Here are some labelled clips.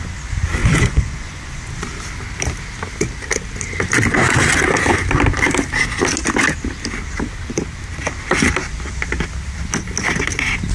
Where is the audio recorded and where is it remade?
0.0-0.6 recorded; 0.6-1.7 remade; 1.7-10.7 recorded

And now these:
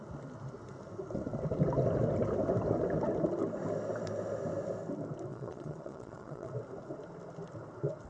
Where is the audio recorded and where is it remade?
0.0-5.3 recorded; 5.3-6.5 remade; 6.5-8.1 recorded

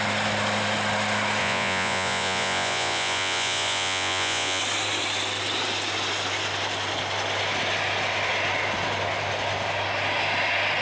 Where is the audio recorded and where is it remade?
0.0-1.4 recorded; 1.4-4.6 remade; 4.6-10.8 recorded

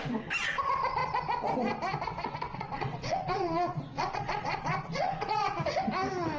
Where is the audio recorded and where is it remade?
0.0-2.5 recorded; 2.5-5.6 remade; 5.6-6.4 recorded

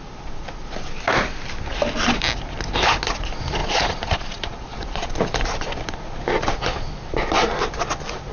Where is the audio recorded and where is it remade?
0.0-3.6 recorded; 3.6-5.1 remade; 5.1-8.3 recorded